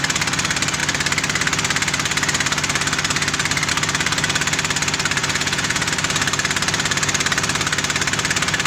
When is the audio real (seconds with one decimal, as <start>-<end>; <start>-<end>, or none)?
0.0-5.2; 5.9-8.7